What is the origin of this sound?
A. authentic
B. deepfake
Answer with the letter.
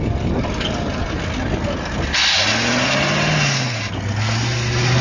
A